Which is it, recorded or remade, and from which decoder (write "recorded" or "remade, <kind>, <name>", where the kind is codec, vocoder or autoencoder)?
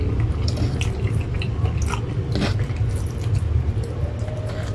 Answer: recorded